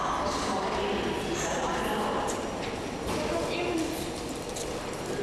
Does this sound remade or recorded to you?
recorded